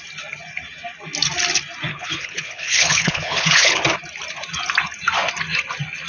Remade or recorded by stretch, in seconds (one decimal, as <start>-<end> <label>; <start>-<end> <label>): 0.0-1.9 recorded; 1.9-3.8 remade; 3.8-6.1 recorded